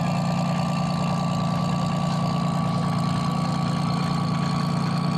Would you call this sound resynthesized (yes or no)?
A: no